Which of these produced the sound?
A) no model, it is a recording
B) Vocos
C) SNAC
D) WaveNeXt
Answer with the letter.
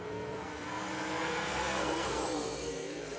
C